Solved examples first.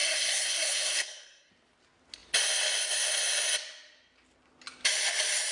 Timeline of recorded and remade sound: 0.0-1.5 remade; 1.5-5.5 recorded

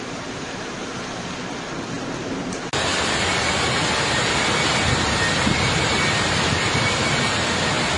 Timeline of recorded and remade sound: 0.0-8.0 recorded

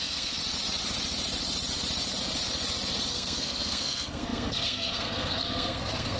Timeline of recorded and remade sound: 0.0-0.4 remade; 0.4-3.1 recorded; 3.1-6.2 remade

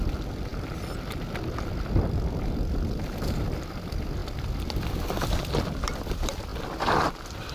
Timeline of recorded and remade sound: 0.0-7.5 remade

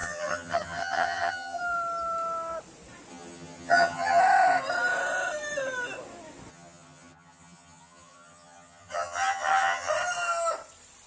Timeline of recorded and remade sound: 0.0-1.6 remade; 1.6-3.1 recorded; 3.1-4.2 remade; 4.2-6.5 recorded; 6.5-9.9 remade; 9.9-11.1 recorded

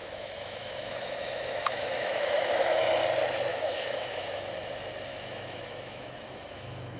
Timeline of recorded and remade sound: 0.0-2.8 remade; 2.8-3.5 recorded; 3.5-4.4 remade; 4.4-5.1 recorded; 5.1-7.0 remade